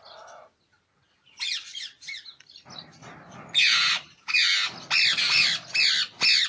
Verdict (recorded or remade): recorded